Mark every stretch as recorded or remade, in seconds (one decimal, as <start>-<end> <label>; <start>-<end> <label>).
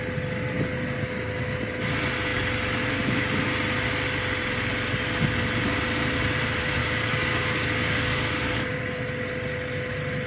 0.0-6.8 recorded; 6.8-8.8 remade; 8.8-10.3 recorded